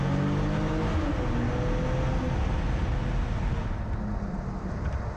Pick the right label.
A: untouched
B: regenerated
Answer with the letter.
A